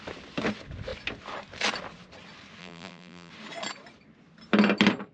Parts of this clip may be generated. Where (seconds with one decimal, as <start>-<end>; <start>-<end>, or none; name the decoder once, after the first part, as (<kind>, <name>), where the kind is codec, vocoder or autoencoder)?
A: 2.6-3.3 (vocoder, BigVGAN v2)